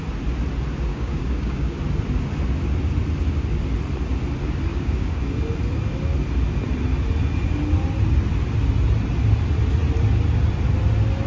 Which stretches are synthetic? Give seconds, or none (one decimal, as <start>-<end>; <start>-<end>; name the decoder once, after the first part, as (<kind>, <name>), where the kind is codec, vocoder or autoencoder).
0.9-1.8 (codec, DAC); 4.7-5.2